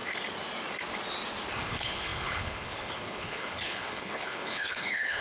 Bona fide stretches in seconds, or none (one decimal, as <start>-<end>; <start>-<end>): 0.0-1.5